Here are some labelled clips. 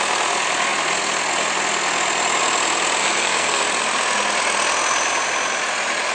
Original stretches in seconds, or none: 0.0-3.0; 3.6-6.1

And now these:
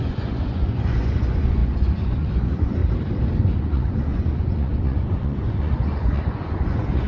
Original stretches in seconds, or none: 2.8-3.6

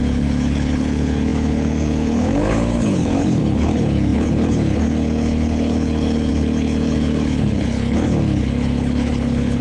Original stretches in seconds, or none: none

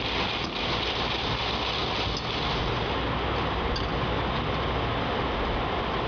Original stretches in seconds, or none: 0.0-6.1